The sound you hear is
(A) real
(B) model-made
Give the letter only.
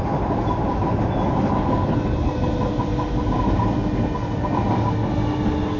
A